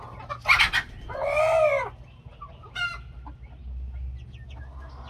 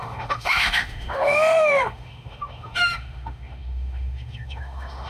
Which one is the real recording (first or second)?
first